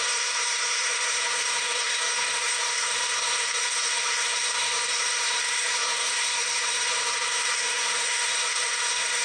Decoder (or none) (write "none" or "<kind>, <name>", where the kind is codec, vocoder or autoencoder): codec, SNAC